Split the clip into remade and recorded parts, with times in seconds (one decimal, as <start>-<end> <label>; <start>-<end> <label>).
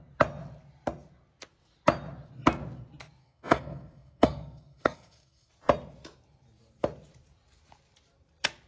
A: 0.0-3.2 recorded; 3.2-5.5 remade; 5.5-8.7 recorded